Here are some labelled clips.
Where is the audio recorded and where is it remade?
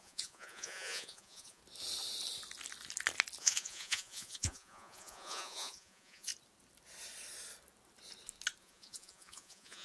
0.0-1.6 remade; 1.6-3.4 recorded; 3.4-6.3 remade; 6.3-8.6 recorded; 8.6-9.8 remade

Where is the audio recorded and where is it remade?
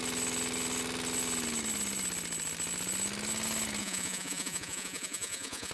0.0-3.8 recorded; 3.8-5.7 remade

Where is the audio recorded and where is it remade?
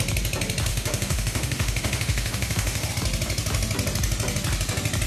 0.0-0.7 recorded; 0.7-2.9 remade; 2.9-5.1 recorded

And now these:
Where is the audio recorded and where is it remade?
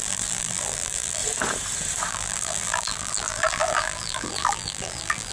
0.0-1.2 remade; 1.2-2.1 recorded; 2.1-5.3 remade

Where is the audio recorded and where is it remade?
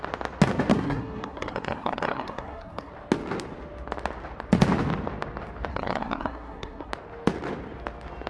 0.0-0.7 recorded; 0.7-2.9 remade; 2.9-5.7 recorded; 5.7-6.9 remade; 6.9-8.3 recorded